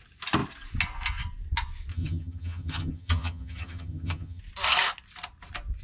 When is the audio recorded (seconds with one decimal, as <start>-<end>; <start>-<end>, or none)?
0.0-1.9; 4.4-5.8